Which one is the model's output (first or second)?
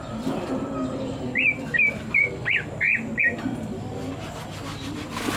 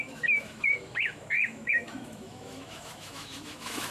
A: second